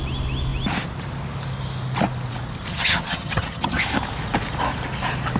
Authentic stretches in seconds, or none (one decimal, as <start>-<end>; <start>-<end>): 0.0-2.7; 3.8-5.4